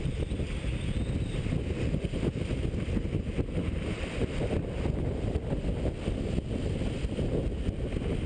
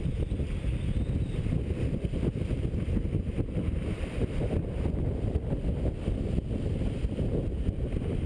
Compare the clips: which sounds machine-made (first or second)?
second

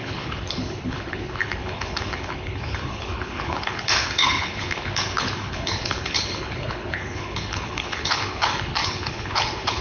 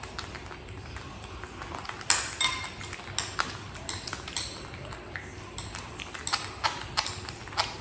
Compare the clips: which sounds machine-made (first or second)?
first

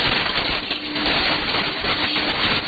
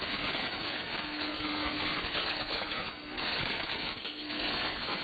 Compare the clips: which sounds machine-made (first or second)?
second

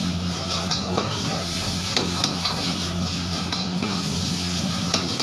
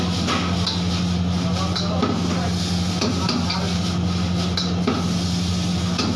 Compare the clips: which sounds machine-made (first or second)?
first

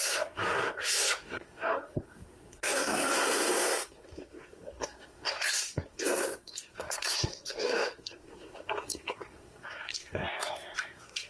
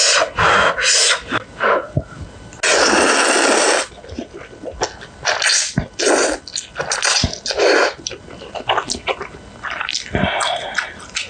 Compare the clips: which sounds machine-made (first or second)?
first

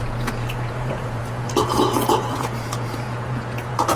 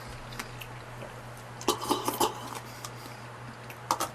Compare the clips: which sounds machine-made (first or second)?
first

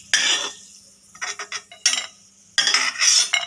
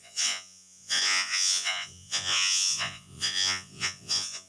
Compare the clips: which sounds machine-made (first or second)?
second